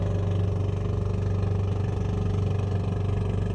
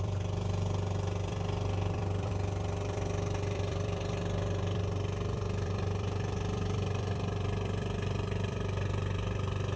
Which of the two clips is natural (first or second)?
first